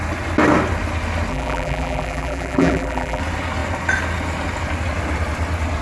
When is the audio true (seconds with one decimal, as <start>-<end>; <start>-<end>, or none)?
0.0-1.3; 3.2-5.8